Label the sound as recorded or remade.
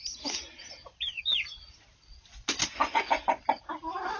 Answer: recorded